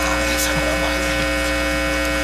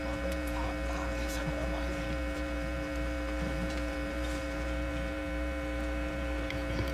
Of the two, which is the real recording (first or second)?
first